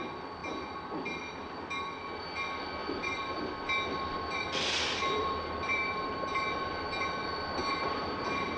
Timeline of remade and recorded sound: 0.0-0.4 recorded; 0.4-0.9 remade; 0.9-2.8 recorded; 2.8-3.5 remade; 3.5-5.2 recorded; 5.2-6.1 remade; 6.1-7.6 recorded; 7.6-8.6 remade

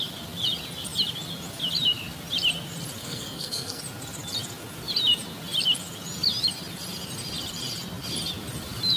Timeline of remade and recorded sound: 0.0-3.0 recorded; 3.0-3.8 remade; 3.8-9.0 recorded

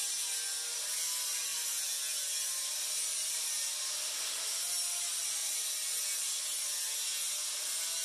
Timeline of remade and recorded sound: 0.0-8.0 recorded

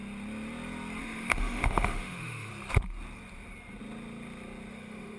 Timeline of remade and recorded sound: 0.0-1.0 recorded; 1.0-2.5 remade; 2.5-4.7 recorded; 4.7-5.2 remade

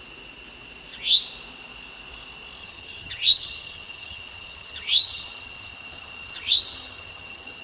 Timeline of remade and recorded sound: 0.0-2.6 recorded; 2.6-7.6 remade

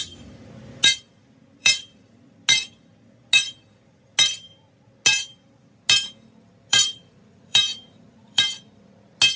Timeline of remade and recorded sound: 0.0-1.6 recorded; 1.6-2.3 remade; 2.3-6.7 recorded; 6.7-8.4 remade; 8.4-9.4 recorded

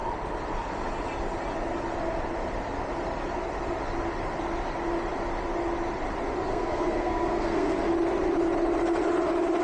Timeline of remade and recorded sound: 0.0-6.5 recorded; 6.5-7.8 remade; 7.8-9.6 recorded

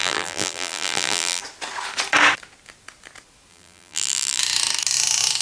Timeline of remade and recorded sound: 0.0-1.4 remade; 1.4-3.5 recorded; 3.5-4.4 remade; 4.4-5.4 recorded